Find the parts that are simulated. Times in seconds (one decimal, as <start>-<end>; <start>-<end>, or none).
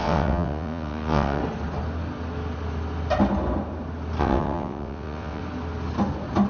0.0-1.4; 4.2-5.4